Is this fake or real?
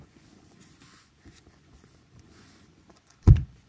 fake